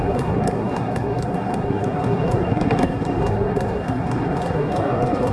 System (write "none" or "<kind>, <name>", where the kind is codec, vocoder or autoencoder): codec, SNAC